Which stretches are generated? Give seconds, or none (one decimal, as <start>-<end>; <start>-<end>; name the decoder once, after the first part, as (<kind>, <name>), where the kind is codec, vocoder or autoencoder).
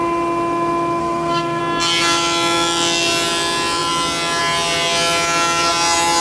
1.0-1.6 (codec, SNAC)